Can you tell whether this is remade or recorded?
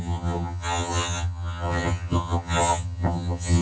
remade